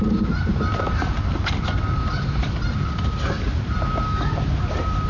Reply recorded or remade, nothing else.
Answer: remade